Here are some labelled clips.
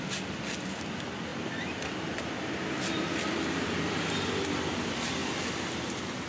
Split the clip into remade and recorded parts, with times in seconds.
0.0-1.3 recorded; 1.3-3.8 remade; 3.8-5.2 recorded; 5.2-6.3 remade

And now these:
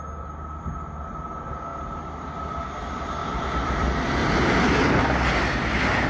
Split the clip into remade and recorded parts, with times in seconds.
0.0-1.7 recorded; 1.7-2.6 remade; 2.6-3.2 recorded; 3.2-3.7 remade; 3.7-6.1 recorded